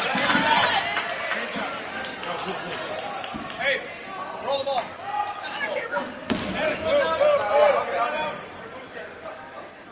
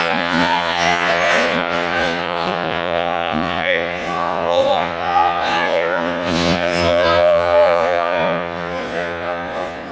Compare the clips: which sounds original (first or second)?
first